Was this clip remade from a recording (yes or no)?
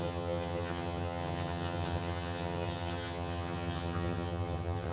yes